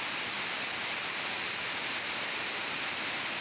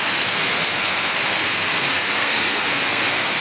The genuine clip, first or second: first